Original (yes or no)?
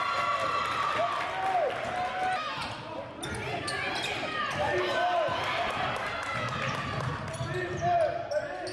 yes